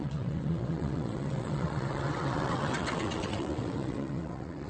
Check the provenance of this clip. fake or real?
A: fake